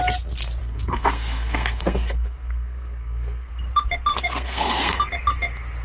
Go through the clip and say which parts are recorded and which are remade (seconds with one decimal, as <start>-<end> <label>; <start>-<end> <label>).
0.0-0.6 recorded; 0.6-3.5 remade; 3.5-4.1 recorded; 4.1-5.1 remade; 5.1-5.8 recorded